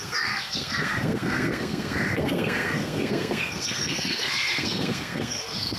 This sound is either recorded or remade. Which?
remade